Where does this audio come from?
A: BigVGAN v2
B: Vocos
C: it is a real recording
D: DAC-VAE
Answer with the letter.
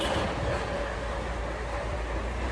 C